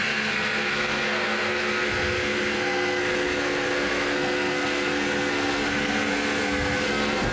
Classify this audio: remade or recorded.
remade